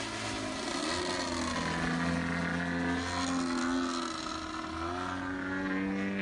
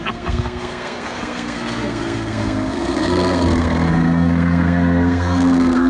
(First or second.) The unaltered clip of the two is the first